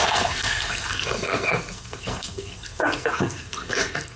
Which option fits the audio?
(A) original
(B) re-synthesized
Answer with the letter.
B